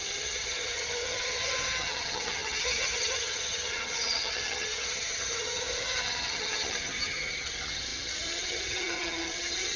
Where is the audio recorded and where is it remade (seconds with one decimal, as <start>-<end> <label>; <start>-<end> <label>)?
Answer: 0.0-9.8 remade